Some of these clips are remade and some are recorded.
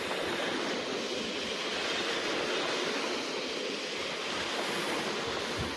recorded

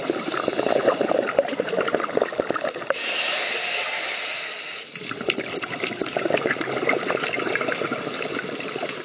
recorded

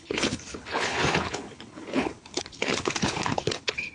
remade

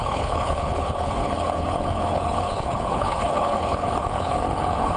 remade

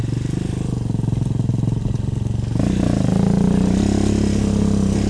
recorded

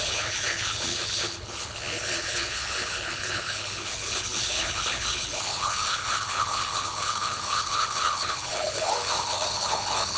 remade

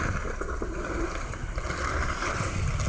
recorded